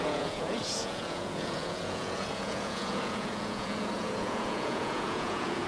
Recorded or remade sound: remade